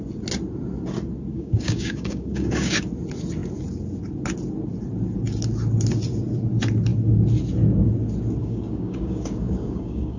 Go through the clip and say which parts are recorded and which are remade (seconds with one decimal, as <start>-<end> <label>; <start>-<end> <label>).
0.0-1.3 recorded; 1.3-2.8 remade; 2.8-8.4 recorded; 8.4-10.2 remade